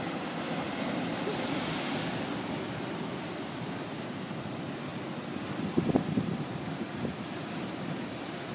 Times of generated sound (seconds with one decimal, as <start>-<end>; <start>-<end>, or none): 4.9-8.0